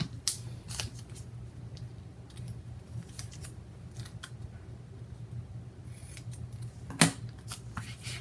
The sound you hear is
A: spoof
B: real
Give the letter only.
B